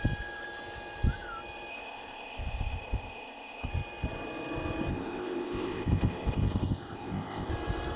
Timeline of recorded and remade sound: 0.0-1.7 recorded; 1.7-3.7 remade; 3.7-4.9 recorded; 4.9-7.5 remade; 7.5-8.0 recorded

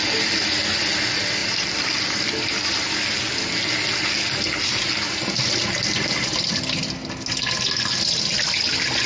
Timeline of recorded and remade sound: 0.0-9.1 recorded

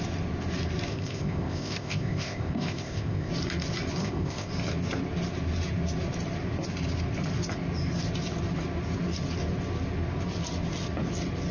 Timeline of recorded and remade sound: 0.0-0.9 recorded; 0.9-3.3 remade; 3.3-4.0 recorded; 4.0-4.5 remade; 4.5-11.5 recorded

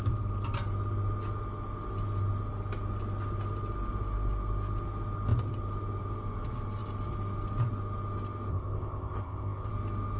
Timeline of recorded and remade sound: 0.0-8.5 recorded; 8.5-9.7 remade; 9.7-10.2 recorded

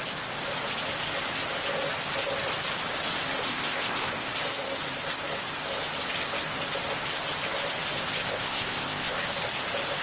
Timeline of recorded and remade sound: 0.0-3.5 recorded; 3.5-4.3 remade; 4.3-8.1 recorded; 8.1-9.2 remade; 9.2-10.0 recorded

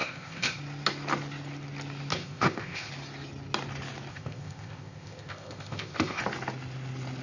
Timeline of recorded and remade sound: 0.0-0.6 remade; 0.6-2.1 recorded; 2.1-2.9 remade; 2.9-4.1 recorded; 4.1-6.2 remade; 6.2-7.2 recorded